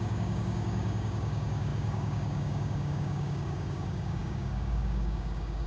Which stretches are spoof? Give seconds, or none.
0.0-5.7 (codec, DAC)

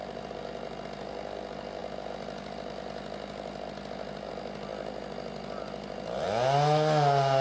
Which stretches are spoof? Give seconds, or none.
none

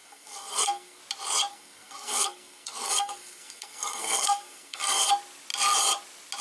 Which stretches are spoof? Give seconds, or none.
0.0-1.0 (codec, SNAC); 1.5-5.1

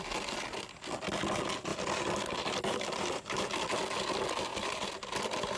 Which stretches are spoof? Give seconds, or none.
1.7-3.4 (vocoder, BigVGAN v2); 4.5-5.6

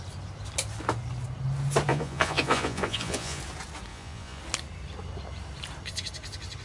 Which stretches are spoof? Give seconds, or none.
1.9-3.4 (vocoder, Vocos); 3.9-4.4

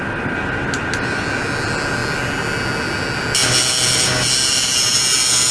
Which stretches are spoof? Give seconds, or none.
none